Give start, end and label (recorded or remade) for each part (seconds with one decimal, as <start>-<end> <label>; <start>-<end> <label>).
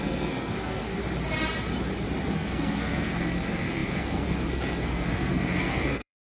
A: 0.0-1.0 remade; 1.0-2.3 recorded; 2.3-6.4 remade